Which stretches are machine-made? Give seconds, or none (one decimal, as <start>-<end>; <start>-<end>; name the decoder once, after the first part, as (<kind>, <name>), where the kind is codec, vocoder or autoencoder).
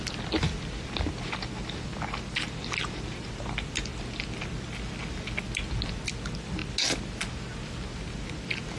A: none